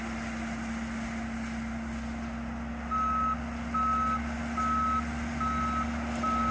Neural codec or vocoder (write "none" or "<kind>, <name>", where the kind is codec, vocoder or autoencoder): none